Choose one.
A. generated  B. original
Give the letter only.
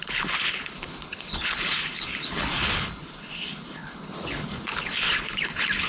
A